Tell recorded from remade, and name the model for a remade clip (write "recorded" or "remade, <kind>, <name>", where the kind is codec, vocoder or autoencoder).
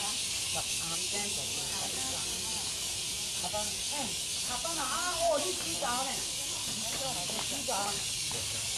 remade, codec, DAC